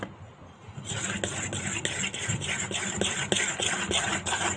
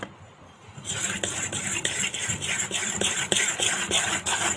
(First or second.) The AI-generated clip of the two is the second